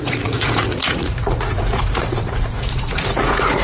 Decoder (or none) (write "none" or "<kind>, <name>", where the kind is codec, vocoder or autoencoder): vocoder, Vocos